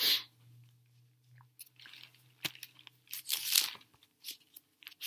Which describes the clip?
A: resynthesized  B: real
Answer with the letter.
B